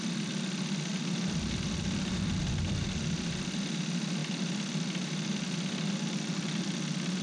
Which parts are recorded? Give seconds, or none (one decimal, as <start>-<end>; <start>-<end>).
0.0-7.2